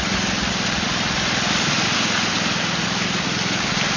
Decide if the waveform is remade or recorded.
recorded